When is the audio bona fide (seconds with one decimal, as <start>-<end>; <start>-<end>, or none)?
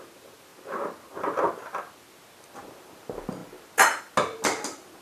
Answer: 0.0-5.0